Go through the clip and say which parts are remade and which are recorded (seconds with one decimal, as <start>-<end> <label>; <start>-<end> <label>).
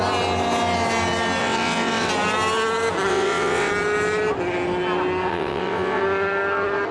0.0-1.4 recorded; 1.4-2.1 remade; 2.1-3.1 recorded; 3.1-3.7 remade; 3.7-5.3 recorded; 5.3-6.0 remade; 6.0-6.9 recorded